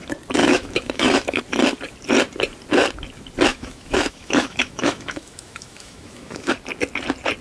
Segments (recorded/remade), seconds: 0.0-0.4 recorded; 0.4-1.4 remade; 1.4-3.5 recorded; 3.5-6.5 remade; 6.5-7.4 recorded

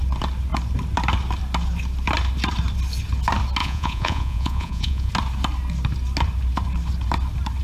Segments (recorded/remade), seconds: 0.0-3.6 recorded; 3.6-5.1 remade; 5.1-7.6 recorded

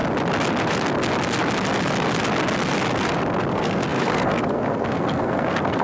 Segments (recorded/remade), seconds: 0.0-3.5 recorded; 3.5-5.8 remade

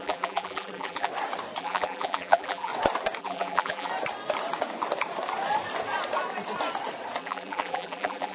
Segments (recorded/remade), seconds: 0.0-1.1 remade; 1.1-1.6 recorded; 1.6-2.7 remade; 2.7-3.2 recorded; 3.2-3.9 remade; 3.9-7.2 recorded; 7.2-8.3 remade

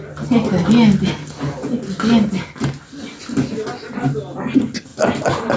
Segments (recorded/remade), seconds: 0.0-5.6 recorded

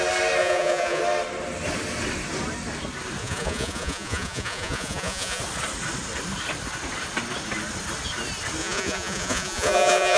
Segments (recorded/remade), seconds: 0.0-0.4 recorded; 0.4-1.0 remade; 1.0-3.2 recorded; 3.2-5.4 remade; 5.4-8.6 recorded; 8.6-10.2 remade

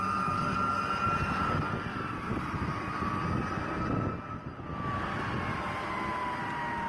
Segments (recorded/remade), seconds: 0.0-1.9 recorded; 1.9-3.1 remade; 3.1-6.9 recorded

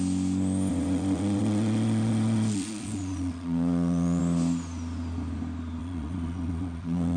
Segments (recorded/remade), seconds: 0.0-0.7 recorded; 0.7-4.2 remade; 4.2-5.8 recorded; 5.8-7.2 remade